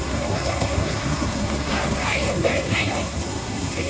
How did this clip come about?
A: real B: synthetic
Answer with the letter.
B